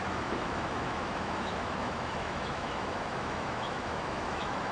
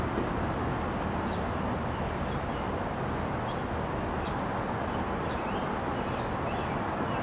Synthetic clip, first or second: first